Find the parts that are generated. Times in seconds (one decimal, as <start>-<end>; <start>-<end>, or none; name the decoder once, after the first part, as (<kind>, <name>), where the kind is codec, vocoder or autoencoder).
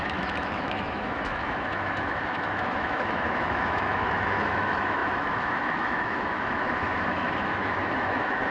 0.0-8.5 (autoencoder, DAC-VAE)